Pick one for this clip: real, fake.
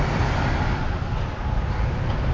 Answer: real